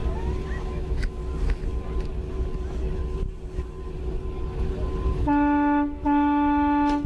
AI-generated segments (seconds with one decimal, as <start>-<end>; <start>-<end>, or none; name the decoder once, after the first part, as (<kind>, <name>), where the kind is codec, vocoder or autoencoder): 0.6-1.2 (autoencoder, DAC-VAE); 5.1-7.1